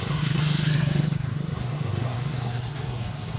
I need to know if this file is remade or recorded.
remade